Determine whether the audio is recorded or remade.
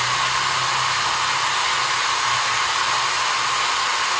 recorded